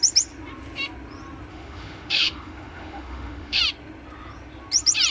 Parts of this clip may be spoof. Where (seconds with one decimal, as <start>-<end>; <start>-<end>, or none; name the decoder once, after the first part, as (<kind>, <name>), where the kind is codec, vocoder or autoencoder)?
1.5-3.6 (autoencoder, DAC-VAE)